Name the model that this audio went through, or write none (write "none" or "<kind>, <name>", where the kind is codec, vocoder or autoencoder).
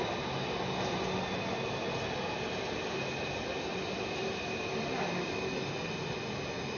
none